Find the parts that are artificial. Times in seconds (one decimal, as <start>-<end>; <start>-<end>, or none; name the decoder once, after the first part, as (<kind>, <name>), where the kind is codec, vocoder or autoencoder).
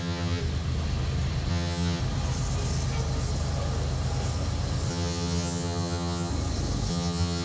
0.0-0.4 (vocoder, HiFi-GAN); 1.5-2.0; 4.9-6.3; 6.9-7.4